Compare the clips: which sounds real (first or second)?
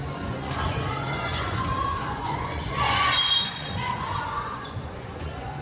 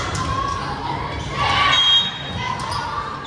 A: second